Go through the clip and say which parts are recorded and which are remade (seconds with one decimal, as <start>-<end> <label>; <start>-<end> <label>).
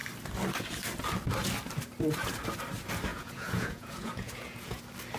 0.0-3.1 recorded; 3.1-4.8 remade; 4.8-5.2 recorded